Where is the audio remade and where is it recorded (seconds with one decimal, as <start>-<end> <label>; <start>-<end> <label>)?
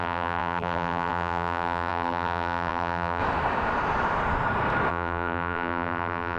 0.0-3.2 remade; 3.2-4.9 recorded; 4.9-6.4 remade